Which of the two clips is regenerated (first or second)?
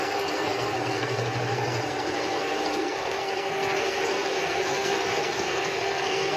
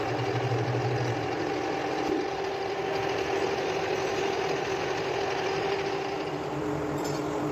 first